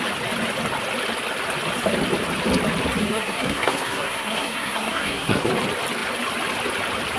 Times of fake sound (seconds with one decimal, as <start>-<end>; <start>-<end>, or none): 3.0-5.5

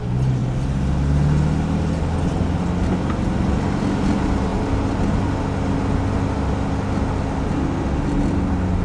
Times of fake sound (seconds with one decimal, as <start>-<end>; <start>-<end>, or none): none

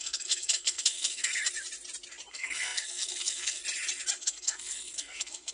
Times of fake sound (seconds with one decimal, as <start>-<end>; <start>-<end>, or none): 0.0-1.3; 2.3-3.6; 4.2-5.5

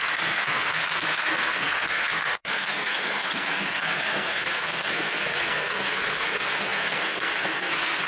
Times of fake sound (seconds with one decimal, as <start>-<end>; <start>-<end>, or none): 0.0-8.1

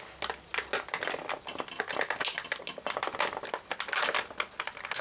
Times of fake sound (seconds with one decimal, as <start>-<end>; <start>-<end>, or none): none

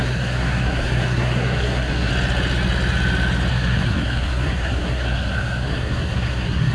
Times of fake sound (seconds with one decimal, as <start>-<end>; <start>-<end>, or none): 0.0-2.1; 3.5-6.7

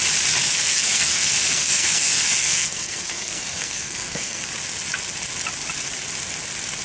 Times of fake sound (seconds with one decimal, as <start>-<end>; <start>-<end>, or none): 0.4-4.5